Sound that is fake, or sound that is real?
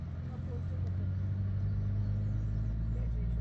real